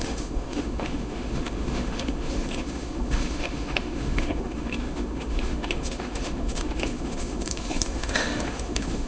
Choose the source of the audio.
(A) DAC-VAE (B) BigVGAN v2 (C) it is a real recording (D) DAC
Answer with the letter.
A